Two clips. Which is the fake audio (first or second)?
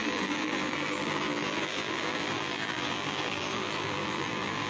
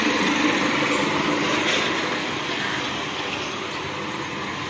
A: first